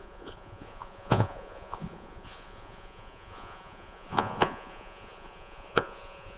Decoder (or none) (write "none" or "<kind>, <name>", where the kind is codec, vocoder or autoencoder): vocoder, Vocos